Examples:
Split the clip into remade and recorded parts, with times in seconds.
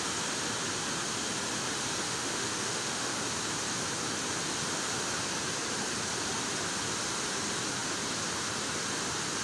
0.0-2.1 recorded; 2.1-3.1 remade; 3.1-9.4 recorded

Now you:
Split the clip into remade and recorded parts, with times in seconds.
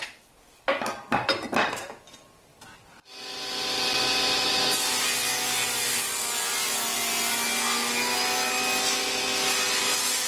0.0-10.3 recorded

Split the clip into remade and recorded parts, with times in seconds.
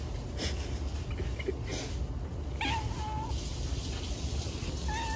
0.0-5.2 recorded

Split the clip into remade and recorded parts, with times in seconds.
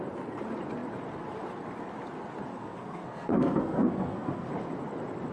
0.0-2.5 recorded; 2.5-4.5 remade; 4.5-5.3 recorded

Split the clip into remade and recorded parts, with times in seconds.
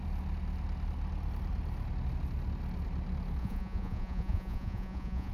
0.0-3.4 recorded; 3.4-5.3 remade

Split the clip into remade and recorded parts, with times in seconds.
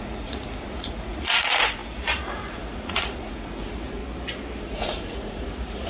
0.0-4.0 remade; 4.0-4.6 recorded; 4.6-5.9 remade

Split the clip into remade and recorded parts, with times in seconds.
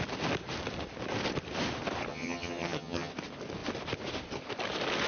0.0-2.1 recorded; 2.1-3.1 remade; 3.1-5.1 recorded